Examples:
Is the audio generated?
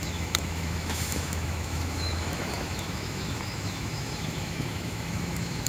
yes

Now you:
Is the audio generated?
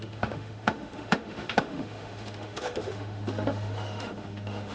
yes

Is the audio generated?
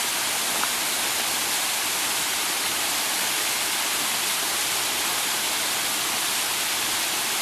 no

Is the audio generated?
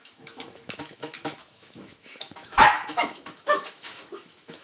yes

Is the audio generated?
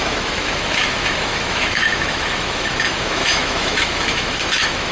yes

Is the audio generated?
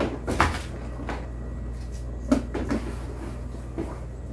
no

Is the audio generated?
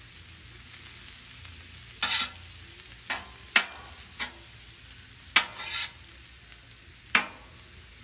no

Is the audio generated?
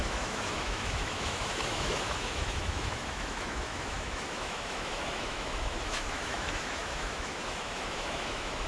yes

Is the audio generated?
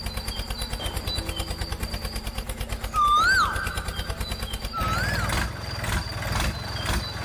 no